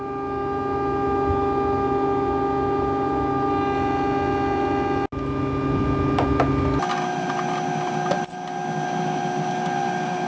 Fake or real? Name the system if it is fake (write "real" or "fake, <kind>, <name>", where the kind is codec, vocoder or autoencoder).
real